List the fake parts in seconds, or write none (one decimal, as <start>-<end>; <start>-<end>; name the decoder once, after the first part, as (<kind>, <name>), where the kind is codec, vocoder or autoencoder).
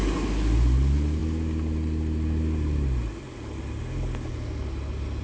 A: none